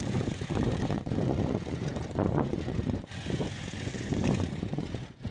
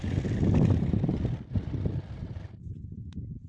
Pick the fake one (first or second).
first